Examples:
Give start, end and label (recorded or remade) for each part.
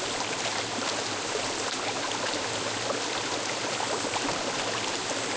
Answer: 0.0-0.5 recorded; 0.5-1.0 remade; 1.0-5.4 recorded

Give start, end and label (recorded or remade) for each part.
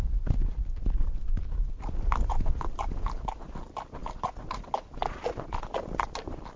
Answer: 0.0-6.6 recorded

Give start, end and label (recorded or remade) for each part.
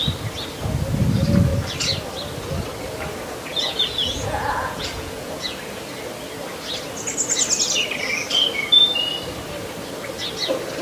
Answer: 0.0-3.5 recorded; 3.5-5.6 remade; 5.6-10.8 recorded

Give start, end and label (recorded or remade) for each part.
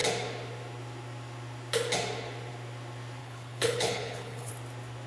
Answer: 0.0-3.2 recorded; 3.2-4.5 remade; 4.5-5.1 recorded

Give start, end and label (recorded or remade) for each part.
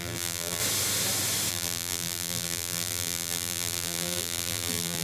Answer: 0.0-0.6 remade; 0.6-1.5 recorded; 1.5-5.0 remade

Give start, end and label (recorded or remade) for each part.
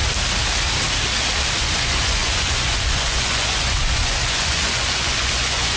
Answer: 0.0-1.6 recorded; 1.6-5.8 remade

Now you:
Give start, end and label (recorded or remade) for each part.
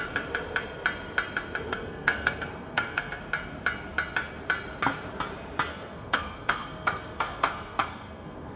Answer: 0.0-1.7 recorded; 1.7-3.2 remade; 3.2-5.7 recorded; 5.7-8.6 remade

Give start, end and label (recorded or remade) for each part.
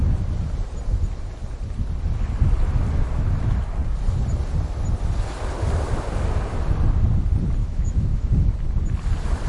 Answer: 0.0-7.6 recorded; 7.6-8.3 remade; 8.3-9.5 recorded